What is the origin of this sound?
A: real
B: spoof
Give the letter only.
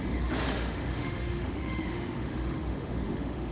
B